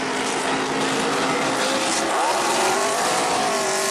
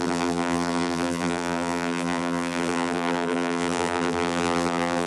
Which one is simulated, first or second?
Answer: second